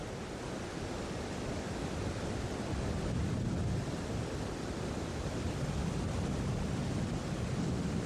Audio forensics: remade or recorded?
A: recorded